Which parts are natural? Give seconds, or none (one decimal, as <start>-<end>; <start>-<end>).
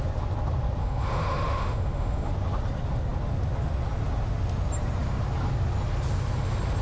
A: 0.0-0.8; 2.3-6.8